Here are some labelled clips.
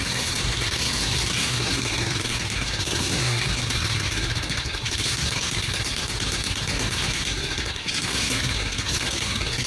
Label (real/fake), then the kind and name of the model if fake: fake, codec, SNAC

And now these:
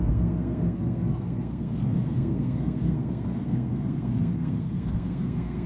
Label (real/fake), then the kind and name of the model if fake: fake, codec, SNAC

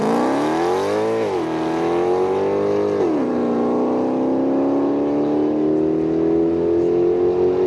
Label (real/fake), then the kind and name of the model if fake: real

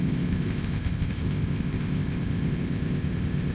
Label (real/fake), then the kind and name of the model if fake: fake, codec, ZipCodec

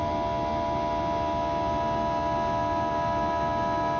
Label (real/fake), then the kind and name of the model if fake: real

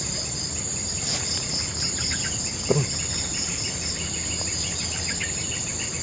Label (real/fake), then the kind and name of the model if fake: real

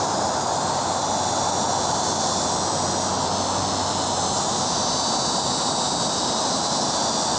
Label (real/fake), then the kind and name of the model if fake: real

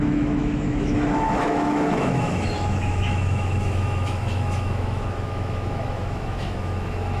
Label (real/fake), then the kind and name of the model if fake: fake, autoencoder, DAC-VAE